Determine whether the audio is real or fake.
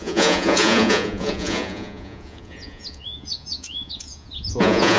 fake